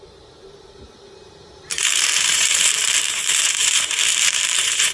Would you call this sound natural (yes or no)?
no